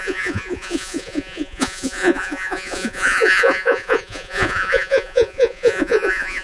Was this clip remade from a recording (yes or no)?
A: yes